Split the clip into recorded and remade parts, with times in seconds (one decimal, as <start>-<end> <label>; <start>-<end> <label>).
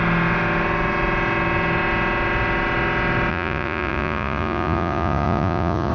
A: 0.0-3.3 recorded; 3.3-5.9 remade